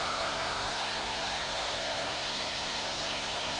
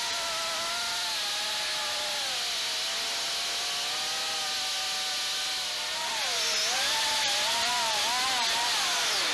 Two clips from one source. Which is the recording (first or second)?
second